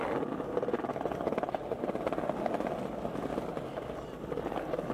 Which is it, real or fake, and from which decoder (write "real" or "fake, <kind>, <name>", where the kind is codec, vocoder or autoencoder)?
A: real